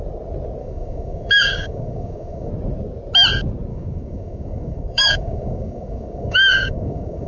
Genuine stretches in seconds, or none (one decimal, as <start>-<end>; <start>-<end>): 0.0-0.6; 2.5-3.7